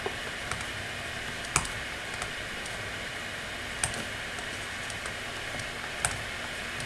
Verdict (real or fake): real